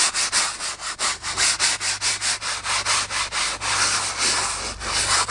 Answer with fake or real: real